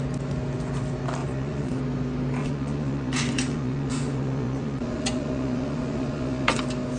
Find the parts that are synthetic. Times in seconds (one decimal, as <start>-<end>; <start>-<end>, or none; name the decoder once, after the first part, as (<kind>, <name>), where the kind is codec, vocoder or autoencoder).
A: 1.2-1.8 (vocoder, Vocos); 2.4-6.6